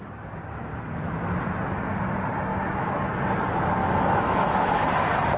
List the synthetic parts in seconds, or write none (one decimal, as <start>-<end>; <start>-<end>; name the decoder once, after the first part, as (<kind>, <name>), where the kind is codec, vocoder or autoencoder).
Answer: 2.5-3.1 (autoencoder, DAC-VAE); 3.8-4.9